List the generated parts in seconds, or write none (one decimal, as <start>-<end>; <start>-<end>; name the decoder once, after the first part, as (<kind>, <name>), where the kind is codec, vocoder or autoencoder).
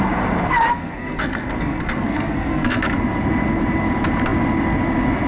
0.7-2.8 (codec, SNAC)